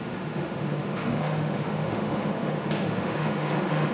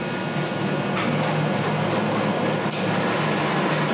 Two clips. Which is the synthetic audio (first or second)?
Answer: first